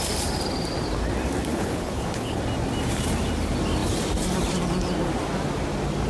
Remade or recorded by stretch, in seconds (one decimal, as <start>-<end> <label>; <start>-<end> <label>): 0.0-1.5 recorded; 1.5-2.4 remade; 2.4-6.1 recorded